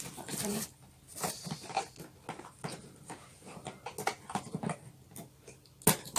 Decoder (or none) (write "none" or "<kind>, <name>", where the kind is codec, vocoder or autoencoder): none